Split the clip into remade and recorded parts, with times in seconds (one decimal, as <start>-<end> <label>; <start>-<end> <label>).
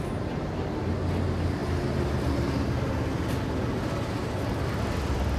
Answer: 0.0-5.4 recorded